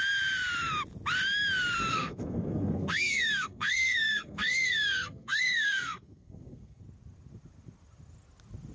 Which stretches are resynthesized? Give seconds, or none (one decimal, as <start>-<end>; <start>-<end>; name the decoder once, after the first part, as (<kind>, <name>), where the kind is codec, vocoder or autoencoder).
1.9-6.8 (codec, SNAC)